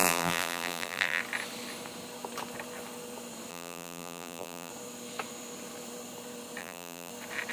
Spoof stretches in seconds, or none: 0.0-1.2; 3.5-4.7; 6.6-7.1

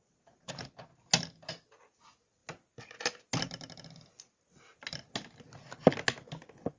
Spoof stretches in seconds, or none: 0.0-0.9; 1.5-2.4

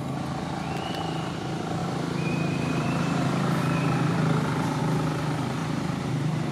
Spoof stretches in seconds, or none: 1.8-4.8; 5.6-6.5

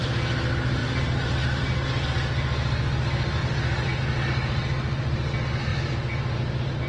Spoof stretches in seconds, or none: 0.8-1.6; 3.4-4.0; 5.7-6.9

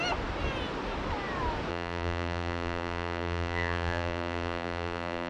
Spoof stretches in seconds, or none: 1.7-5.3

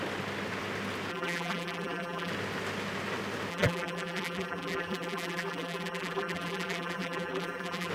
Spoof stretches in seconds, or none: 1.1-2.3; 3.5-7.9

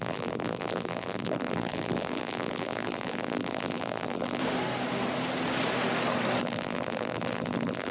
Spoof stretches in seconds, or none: 0.0-4.4; 6.4-7.9